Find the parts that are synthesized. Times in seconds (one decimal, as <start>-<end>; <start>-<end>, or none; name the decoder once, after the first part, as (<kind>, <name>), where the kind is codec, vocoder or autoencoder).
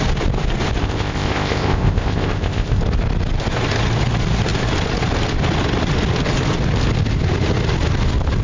0.8-2.8 (codec, ZipCodec)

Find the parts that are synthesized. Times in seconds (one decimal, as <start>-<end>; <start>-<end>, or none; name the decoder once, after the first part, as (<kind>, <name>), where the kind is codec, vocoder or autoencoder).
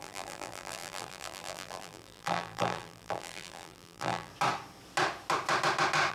0.0-4.3 (vocoder, BigVGAN v2)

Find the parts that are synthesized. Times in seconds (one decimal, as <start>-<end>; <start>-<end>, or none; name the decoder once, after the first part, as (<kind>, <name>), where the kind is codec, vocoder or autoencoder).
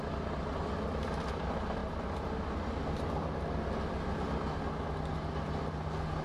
none